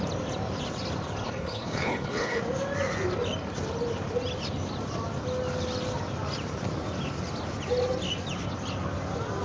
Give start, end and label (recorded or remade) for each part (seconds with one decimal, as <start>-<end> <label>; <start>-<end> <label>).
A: 0.0-1.2 recorded; 1.2-2.4 remade; 2.4-9.4 recorded